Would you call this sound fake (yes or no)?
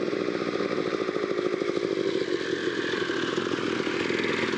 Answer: no